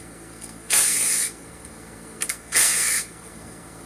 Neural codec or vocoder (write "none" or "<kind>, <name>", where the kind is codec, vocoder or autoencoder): codec, SNAC